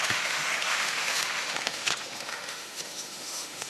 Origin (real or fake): fake